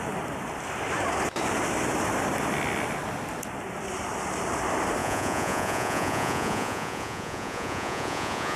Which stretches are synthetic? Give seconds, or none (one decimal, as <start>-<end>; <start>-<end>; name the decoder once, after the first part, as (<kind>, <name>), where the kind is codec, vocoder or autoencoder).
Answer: 5.0-8.6 (vocoder, Vocos)